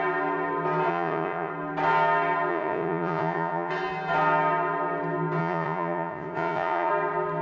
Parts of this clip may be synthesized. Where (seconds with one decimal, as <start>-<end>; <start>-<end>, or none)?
0.9-1.5; 2.5-3.7; 5.4-6.9